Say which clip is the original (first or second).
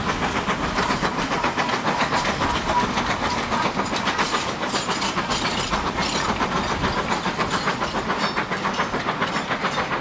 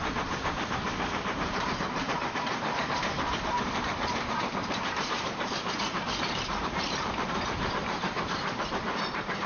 first